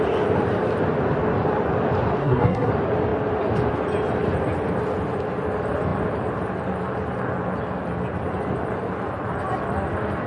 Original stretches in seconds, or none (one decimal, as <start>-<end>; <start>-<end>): 0.0-2.2; 2.7-10.3